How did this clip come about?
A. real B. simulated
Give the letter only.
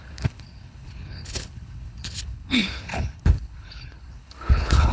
B